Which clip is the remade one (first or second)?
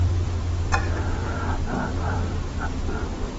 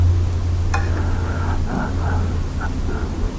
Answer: first